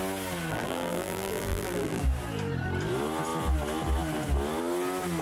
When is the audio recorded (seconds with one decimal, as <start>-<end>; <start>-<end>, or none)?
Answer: 0.0-0.5; 2.0-5.2